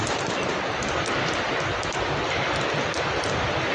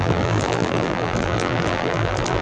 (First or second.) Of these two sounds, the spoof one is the second